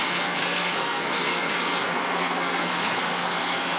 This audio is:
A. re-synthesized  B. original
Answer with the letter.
A